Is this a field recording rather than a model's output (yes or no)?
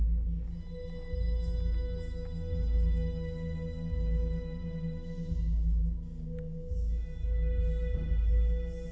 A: yes